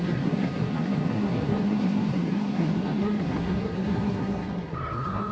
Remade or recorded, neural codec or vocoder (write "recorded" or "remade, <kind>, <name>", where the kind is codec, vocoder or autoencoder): remade, codec, SNAC